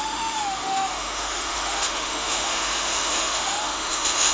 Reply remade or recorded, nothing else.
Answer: remade